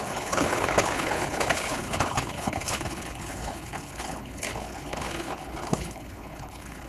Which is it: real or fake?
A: fake